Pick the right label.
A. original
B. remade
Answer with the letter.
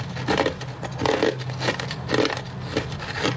A